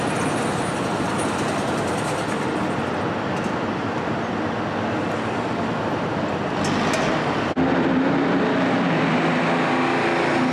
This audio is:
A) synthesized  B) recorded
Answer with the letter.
B